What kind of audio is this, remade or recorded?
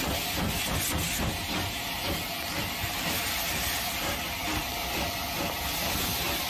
recorded